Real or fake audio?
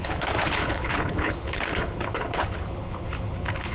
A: fake